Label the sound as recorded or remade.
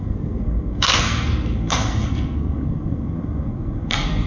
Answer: remade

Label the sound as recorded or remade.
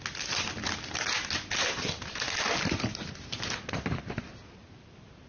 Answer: recorded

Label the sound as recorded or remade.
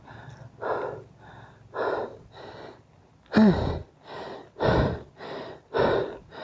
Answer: recorded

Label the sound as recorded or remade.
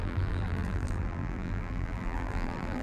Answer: remade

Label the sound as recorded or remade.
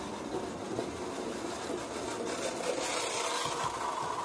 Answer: recorded